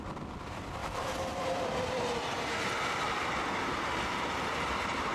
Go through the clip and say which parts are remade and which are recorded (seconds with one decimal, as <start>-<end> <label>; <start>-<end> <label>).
0.0-0.8 recorded; 0.8-2.5 remade; 2.5-5.1 recorded